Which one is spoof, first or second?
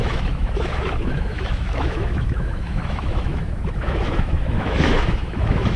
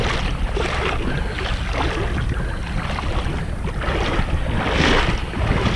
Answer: first